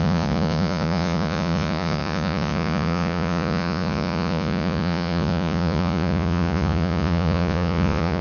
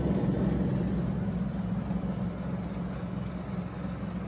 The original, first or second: second